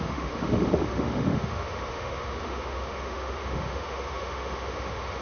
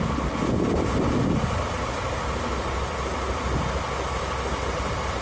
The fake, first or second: first